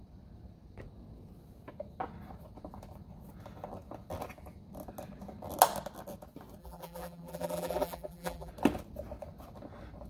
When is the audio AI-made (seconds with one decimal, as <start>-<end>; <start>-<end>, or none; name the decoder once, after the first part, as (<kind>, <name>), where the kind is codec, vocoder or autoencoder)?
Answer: 6.6-8.5 (vocoder, BigVGAN v2)